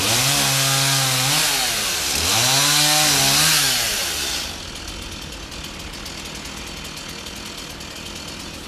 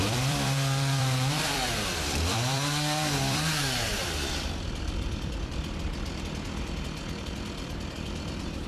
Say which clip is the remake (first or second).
second